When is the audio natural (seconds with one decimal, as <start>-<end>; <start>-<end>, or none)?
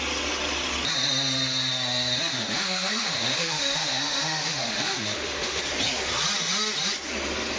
0.0-2.3; 5.6-7.6